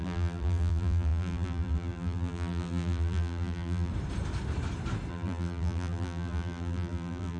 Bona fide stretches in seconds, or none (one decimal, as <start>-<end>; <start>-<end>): 3.9-5.1